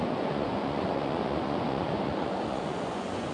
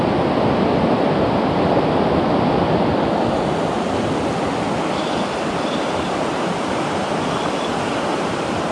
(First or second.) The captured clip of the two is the second